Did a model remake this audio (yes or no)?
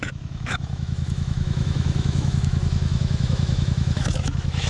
yes